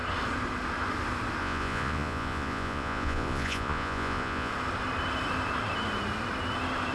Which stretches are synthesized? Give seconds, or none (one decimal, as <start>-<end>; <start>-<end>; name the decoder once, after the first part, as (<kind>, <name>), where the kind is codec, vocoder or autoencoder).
1.4-4.5 (vocoder, Vocos)

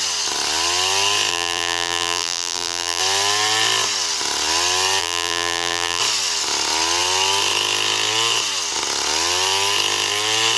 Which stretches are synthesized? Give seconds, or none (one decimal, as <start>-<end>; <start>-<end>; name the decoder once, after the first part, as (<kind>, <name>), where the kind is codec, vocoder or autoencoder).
1.3-3.0 (vocoder, BigVGAN v2); 5.0-6.0

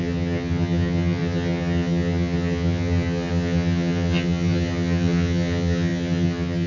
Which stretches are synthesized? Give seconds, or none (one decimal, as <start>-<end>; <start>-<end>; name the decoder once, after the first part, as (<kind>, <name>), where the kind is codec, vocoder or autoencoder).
0.0-6.7 (vocoder, HiFi-GAN)

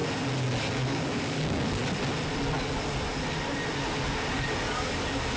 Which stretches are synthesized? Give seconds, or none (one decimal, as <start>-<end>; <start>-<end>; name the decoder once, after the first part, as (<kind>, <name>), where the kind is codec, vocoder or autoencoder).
0.6-1.8 (codec, DAC); 4.3-5.4

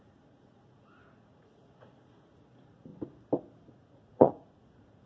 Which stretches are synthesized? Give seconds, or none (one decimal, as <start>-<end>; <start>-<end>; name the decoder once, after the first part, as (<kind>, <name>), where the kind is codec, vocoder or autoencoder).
0.0-2.9 (vocoder, Vocos); 3.7-5.1

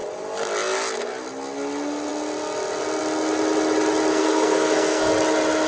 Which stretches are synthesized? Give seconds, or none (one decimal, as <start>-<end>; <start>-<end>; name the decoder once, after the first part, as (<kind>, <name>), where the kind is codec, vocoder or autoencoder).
4.1-5.1 (codec, SNAC)

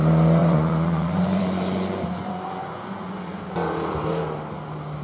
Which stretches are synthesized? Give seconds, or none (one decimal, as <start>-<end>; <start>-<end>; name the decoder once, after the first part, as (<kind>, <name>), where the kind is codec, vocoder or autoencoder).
0.4-3.4 (vocoder, Vocos)

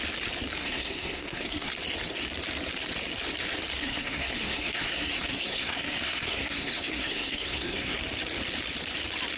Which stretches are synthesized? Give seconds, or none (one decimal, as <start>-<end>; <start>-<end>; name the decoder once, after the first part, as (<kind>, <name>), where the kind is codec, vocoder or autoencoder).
0.6-1.7 (codec, SNAC); 3.8-8.0